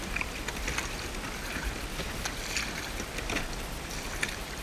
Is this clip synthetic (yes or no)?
no